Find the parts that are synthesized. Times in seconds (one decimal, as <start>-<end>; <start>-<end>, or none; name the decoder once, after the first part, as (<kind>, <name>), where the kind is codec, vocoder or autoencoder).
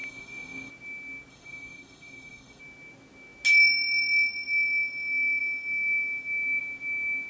0.0-0.7 (codec, SNAC); 1.3-2.6